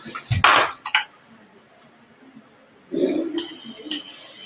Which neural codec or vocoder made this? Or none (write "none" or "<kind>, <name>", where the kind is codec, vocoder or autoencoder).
none